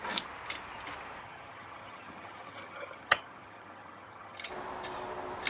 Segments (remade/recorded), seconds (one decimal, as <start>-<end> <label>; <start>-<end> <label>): 0.0-1.2 recorded; 1.2-4.5 remade; 4.5-5.5 recorded